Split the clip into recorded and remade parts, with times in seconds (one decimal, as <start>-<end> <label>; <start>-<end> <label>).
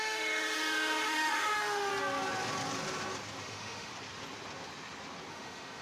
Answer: 0.0-1.9 remade; 1.9-3.4 recorded; 3.4-3.9 remade; 3.9-5.3 recorded; 5.3-5.8 remade